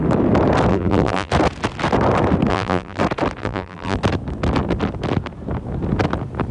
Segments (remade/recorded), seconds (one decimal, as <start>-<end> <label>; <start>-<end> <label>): 0.0-0.7 recorded; 0.7-1.3 remade; 1.3-2.5 recorded; 2.5-3.0 remade; 3.0-3.4 recorded; 3.4-4.0 remade; 4.0-6.5 recorded